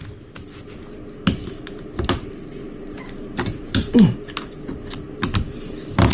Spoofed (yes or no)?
no